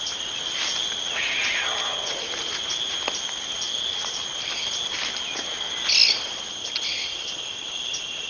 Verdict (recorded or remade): recorded